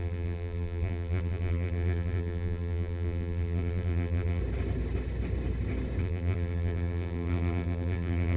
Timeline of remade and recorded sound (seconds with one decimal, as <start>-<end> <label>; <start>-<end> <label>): 0.0-4.4 remade; 4.4-6.0 recorded; 6.0-8.4 remade